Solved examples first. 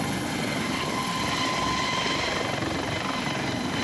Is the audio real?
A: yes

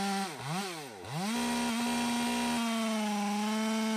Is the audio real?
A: yes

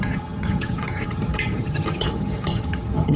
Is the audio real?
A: no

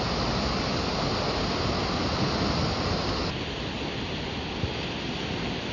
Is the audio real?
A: yes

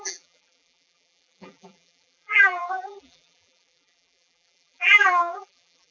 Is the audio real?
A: no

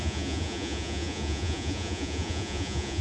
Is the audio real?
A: no